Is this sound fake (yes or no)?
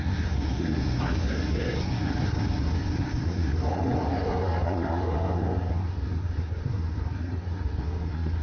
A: yes